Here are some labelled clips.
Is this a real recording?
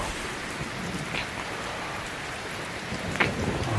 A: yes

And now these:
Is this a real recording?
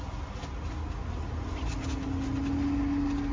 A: yes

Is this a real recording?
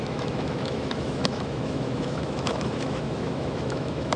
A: no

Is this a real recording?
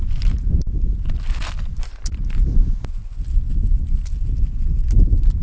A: yes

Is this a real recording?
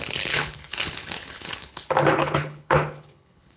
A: no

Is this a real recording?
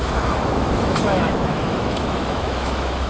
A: no